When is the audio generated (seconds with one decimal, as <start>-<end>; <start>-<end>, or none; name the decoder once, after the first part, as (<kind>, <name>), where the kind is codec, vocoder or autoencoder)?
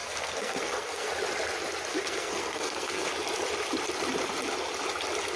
0.0-1.1 (codec, SNAC); 1.9-3.1